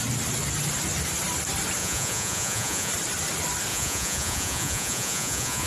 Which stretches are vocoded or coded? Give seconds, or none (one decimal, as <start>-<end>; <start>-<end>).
1.8-2.9; 3.7-5.7